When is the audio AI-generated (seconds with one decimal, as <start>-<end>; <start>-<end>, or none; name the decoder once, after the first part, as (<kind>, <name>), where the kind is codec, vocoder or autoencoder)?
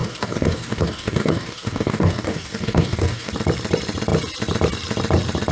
0.0-3.3 (codec, DAC)